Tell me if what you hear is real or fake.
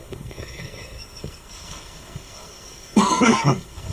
fake